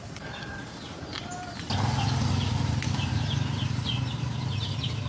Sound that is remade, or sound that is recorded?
recorded